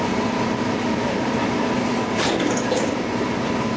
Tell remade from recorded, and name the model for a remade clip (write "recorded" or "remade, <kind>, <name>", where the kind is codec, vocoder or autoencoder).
recorded